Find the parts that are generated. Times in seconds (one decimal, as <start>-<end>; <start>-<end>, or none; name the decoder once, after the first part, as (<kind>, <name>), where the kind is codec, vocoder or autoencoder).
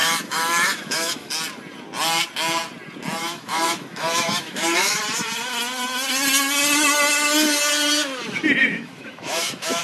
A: 0.0-1.3 (autoencoder, DAC-VAE); 3.2-5.0; 8.6-9.8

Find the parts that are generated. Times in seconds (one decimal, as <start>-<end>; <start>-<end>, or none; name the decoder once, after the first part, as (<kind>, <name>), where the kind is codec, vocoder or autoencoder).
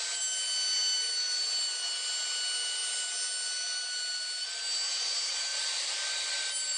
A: 5.5-6.3 (vocoder, BigVGAN v2)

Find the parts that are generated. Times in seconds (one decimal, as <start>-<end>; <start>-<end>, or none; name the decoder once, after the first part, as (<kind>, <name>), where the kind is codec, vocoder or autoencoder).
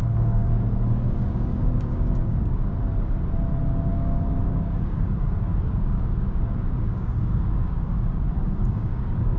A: 0.0-2.7 (codec, DAC); 3.9-9.4